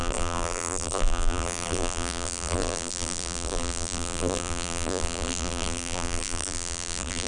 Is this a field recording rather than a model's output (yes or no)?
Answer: no